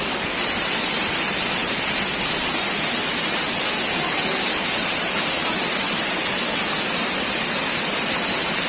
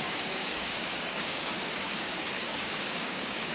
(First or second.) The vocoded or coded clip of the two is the second